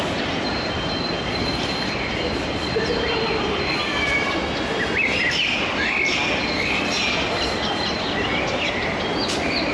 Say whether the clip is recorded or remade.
remade